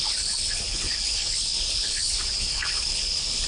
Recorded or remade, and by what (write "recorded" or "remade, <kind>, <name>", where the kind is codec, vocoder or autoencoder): remade, codec, HILCodec